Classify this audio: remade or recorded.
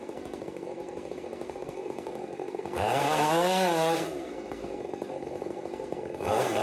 remade